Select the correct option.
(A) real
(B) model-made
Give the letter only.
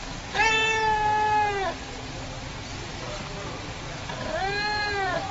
A